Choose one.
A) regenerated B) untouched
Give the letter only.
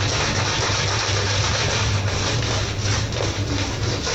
B